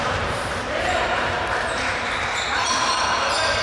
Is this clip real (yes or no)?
no